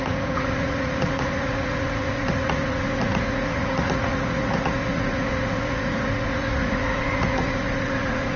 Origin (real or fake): fake